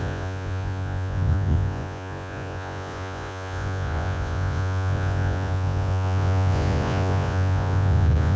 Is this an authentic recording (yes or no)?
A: no